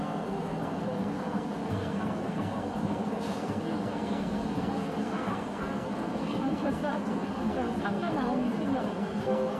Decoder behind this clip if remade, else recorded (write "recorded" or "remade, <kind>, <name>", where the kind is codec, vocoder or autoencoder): remade, codec, SNAC